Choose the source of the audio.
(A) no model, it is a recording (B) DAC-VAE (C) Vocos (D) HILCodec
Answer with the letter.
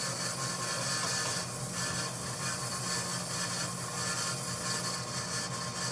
A